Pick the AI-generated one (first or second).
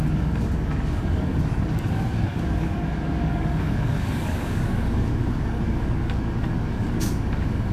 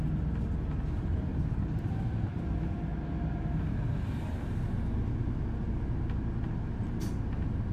first